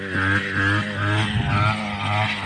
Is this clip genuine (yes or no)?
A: yes